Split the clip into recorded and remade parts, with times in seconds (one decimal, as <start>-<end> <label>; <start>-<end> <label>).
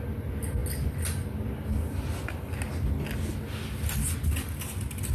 0.0-5.1 recorded